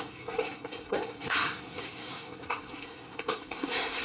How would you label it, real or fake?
fake